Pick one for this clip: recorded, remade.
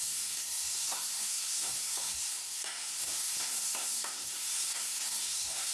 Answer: remade